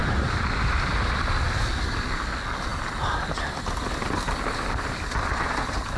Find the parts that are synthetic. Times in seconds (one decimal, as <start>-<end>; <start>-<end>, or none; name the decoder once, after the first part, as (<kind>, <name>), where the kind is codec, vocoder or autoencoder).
none